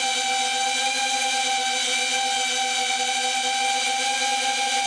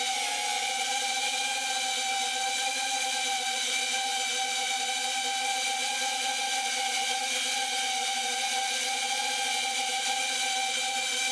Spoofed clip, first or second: second